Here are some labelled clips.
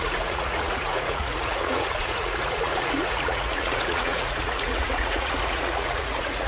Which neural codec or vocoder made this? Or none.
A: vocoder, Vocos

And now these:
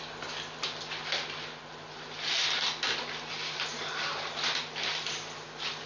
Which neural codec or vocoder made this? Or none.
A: none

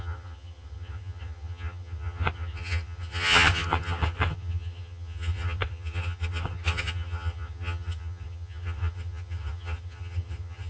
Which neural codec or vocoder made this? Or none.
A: vocoder, HiFi-GAN